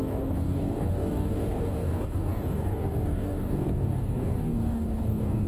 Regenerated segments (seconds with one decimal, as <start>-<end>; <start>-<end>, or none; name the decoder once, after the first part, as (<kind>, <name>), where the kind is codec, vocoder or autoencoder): 0.0-5.5 (codec, DAC)